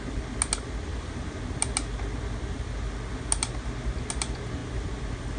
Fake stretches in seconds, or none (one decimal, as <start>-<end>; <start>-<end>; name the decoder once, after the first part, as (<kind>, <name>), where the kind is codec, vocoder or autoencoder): none